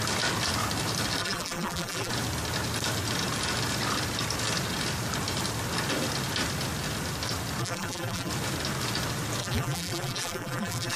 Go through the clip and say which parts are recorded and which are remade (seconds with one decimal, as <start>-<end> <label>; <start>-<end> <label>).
0.0-1.2 recorded; 1.2-2.1 remade; 2.1-7.6 recorded; 7.6-8.3 remade; 8.3-9.4 recorded; 9.4-11.0 remade